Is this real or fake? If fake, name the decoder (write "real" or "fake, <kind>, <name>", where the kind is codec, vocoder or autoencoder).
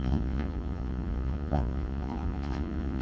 fake, vocoder, Vocos